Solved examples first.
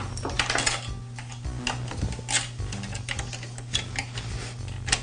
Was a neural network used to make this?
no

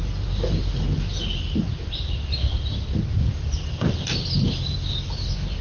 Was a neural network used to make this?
no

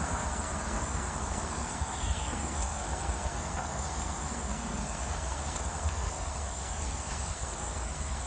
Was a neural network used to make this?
yes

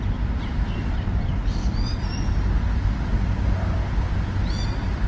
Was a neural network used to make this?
no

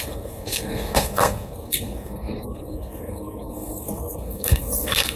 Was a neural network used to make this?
yes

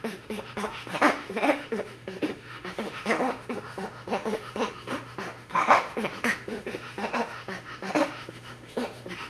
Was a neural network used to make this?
yes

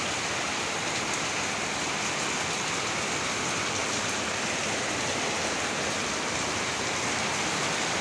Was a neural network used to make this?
no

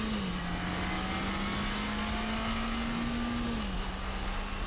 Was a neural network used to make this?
no